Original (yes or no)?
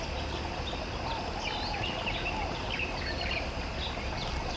yes